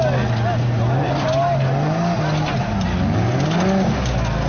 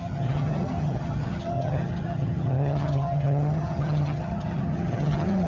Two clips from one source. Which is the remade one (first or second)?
second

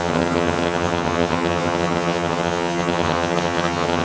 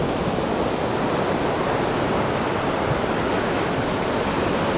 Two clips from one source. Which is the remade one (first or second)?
first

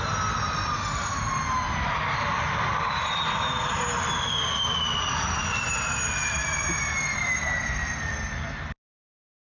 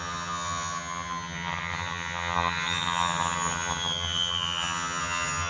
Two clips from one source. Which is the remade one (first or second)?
second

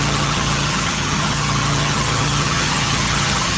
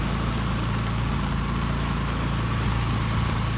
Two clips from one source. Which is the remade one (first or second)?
first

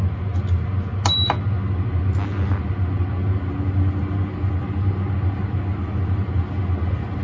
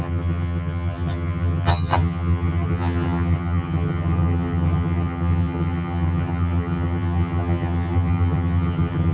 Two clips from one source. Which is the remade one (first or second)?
second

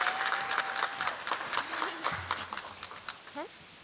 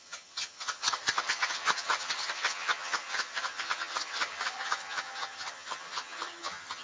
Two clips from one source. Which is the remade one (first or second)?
second